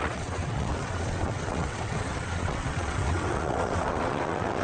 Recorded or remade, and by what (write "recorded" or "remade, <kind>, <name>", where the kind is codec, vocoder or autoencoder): remade, vocoder, WaveNeXt